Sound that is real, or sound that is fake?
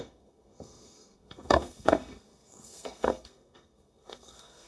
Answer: fake